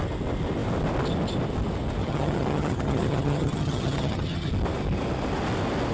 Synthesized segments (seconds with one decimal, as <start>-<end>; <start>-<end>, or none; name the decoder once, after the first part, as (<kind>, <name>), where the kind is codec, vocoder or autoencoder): 2.0-4.5 (vocoder, HiFi-GAN)